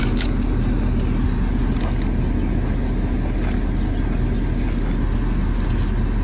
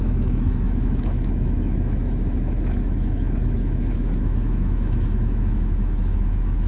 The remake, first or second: second